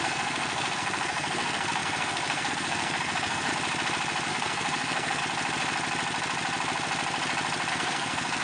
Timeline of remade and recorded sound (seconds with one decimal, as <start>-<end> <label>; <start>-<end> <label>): 0.0-3.5 remade; 3.5-4.3 recorded; 4.3-5.2 remade; 5.2-7.7 recorded; 7.7-8.4 remade